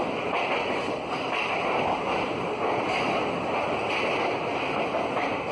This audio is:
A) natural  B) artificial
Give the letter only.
A